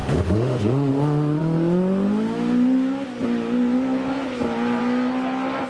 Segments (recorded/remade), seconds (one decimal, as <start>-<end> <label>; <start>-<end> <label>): 0.0-0.9 remade; 0.9-5.7 recorded